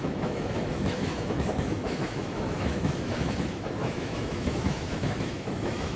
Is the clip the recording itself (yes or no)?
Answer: no